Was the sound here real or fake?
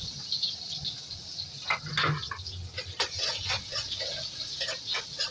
real